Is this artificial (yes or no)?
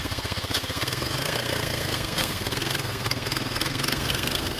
yes